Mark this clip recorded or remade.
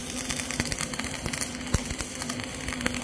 recorded